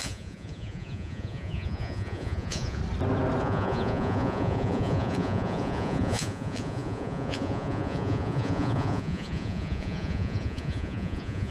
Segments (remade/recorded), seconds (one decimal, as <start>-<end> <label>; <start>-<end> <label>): 0.0-2.8 remade; 2.8-3.4 recorded; 3.4-11.5 remade